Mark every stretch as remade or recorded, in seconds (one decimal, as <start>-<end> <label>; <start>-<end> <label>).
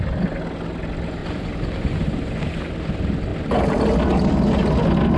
0.0-1.2 recorded; 1.2-2.1 remade; 2.1-3.3 recorded; 3.3-3.8 remade; 3.8-5.2 recorded